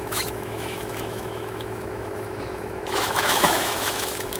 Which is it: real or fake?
fake